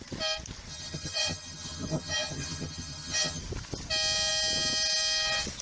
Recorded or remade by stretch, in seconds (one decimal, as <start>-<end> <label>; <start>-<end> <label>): 0.0-0.7 recorded; 0.7-3.4 remade; 3.4-5.6 recorded